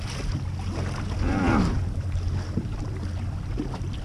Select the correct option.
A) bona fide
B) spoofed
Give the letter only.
A